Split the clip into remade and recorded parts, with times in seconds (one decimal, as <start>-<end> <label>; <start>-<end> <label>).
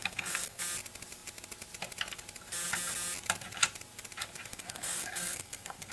0.0-0.6 remade; 0.6-4.5 recorded; 4.5-5.9 remade